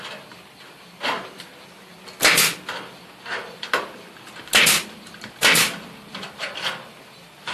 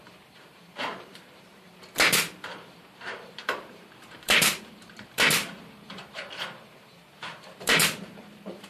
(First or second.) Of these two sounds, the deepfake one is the second